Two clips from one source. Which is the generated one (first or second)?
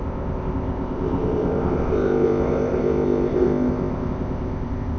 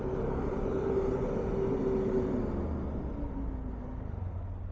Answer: first